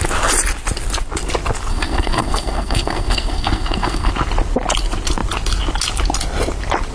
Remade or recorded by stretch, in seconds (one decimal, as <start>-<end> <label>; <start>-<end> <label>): 0.0-1.7 recorded; 1.7-4.1 remade; 4.1-6.9 recorded